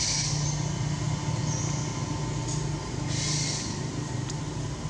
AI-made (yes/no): no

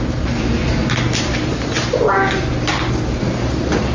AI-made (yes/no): no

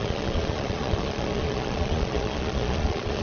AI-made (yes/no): yes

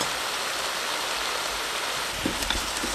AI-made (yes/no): no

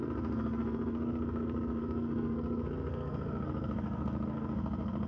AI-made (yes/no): yes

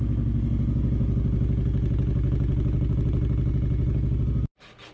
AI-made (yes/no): no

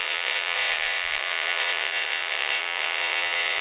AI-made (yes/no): yes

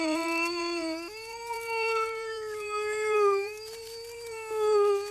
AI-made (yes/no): yes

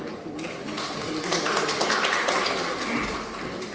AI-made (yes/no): no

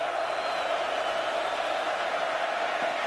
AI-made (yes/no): no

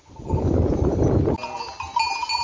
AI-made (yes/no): no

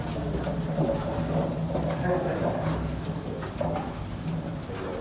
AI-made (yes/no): no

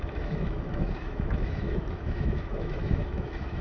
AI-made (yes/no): yes